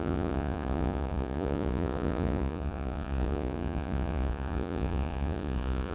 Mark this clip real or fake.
fake